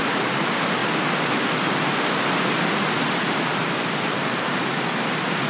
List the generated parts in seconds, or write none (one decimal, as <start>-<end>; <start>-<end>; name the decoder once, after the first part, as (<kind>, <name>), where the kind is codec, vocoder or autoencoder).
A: none